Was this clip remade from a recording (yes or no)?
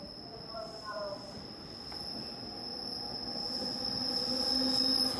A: no